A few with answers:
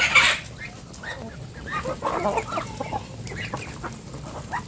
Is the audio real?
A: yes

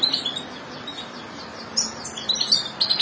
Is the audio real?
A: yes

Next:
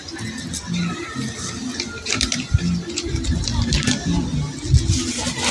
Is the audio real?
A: yes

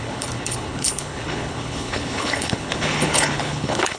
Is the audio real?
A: no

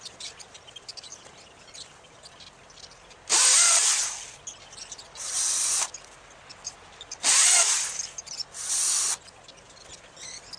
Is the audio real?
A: yes